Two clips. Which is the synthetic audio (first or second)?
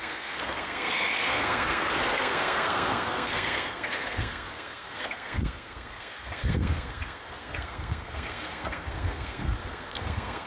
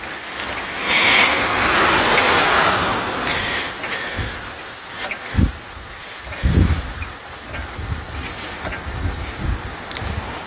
first